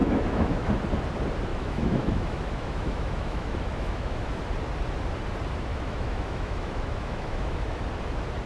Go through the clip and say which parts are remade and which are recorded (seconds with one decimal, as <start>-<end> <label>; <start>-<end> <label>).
0.0-0.7 remade; 0.7-1.5 recorded; 1.5-4.4 remade; 4.4-5.7 recorded; 5.7-7.8 remade; 7.8-8.5 recorded